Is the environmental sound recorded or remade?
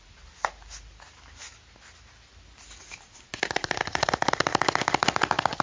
recorded